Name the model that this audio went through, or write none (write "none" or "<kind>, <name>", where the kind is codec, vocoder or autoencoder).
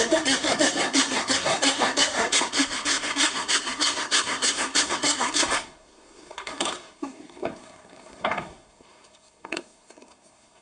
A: codec, SNAC